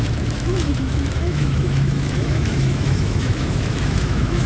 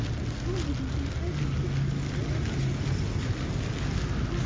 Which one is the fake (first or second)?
first